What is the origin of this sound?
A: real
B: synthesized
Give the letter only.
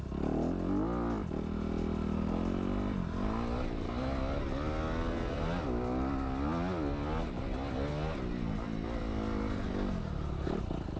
A